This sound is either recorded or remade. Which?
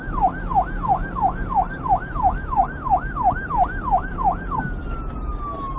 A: recorded